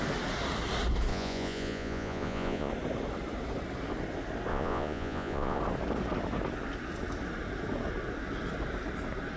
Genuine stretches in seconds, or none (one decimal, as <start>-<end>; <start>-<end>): 0.0-1.1; 2.7-4.5; 5.6-9.4